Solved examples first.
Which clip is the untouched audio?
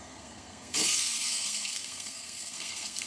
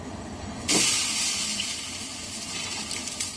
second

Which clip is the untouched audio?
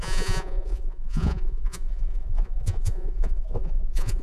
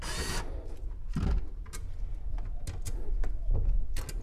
second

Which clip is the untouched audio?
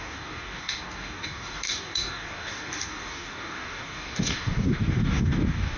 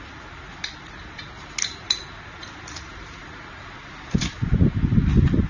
second